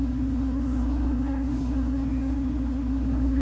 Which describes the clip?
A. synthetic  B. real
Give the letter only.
A